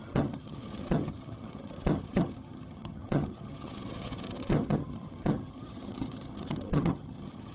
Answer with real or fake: fake